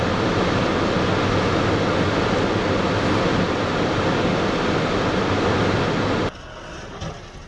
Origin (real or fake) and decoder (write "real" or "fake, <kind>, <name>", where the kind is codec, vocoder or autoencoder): real